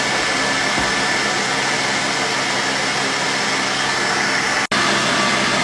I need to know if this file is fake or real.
real